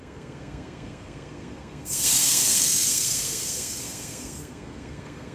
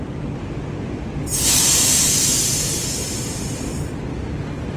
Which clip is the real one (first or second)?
second